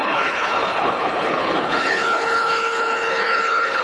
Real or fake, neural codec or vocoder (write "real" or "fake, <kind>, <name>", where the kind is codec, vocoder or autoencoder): fake, codec, HILCodec